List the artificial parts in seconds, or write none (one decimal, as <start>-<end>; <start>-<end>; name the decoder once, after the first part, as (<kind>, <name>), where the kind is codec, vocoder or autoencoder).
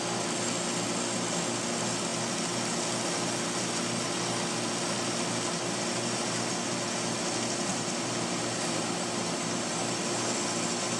7.7-9.7 (vocoder, BigVGAN v2)